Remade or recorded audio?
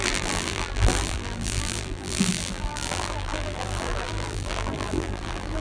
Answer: remade